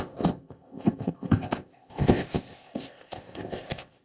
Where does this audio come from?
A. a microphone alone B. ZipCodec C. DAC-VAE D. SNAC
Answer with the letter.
B